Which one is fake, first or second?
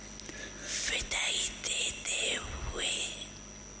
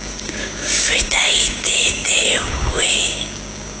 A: second